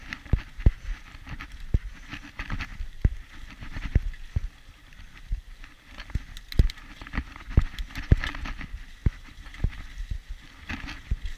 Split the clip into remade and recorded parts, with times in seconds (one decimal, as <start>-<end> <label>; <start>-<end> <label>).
0.0-2.7 recorded; 2.7-5.6 remade; 5.6-9.0 recorded; 9.0-9.6 remade; 9.6-11.4 recorded